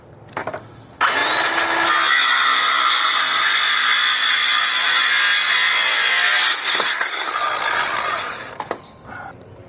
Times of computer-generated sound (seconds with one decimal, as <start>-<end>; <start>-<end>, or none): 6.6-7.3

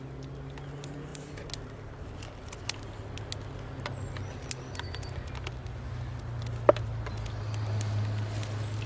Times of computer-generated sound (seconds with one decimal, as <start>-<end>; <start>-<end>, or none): none

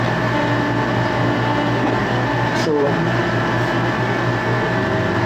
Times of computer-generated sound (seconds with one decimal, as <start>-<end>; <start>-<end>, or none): 2.0-5.3